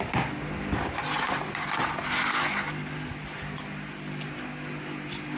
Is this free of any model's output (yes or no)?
yes